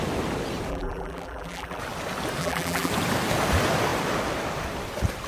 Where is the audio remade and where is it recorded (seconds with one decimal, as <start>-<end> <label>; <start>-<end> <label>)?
0.0-0.7 recorded; 0.7-1.8 remade; 1.8-2.4 recorded; 2.4-2.9 remade; 2.9-5.3 recorded